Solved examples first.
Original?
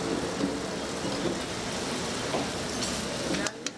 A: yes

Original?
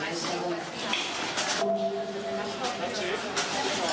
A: yes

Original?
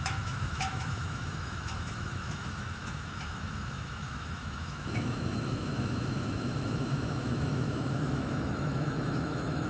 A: no